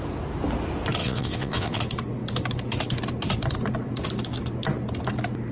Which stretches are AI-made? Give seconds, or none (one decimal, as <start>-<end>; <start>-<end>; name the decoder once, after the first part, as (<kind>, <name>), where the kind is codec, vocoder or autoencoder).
1.0-1.8 (vocoder, WaveNeXt)